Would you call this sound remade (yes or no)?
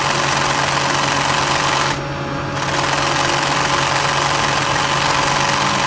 no